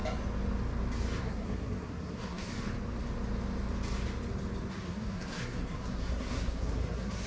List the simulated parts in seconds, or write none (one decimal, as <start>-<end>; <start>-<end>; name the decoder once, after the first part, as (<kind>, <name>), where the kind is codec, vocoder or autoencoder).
1.2-2.5 (codec, SNAC); 4.7-7.3